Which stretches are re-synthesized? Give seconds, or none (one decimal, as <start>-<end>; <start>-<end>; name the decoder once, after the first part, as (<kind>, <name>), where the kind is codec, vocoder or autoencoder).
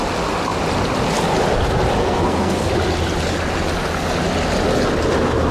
2.0-2.7 (codec, SNAC)